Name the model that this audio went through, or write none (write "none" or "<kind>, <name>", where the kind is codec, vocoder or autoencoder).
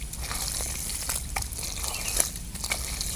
none